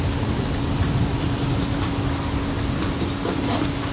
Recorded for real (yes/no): yes